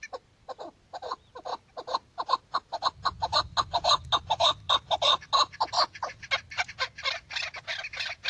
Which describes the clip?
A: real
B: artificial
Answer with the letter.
A